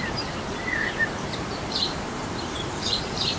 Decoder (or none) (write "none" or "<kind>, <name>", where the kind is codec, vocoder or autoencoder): vocoder, BigVGAN v2